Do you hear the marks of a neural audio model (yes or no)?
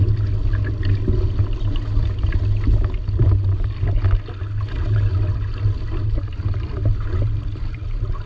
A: no